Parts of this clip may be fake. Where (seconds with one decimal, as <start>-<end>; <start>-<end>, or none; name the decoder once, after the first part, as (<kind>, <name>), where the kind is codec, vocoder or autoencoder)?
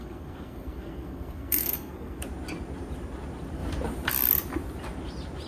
0.0-2.2 (codec, SNAC)